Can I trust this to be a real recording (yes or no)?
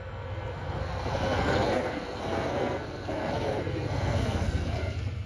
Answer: no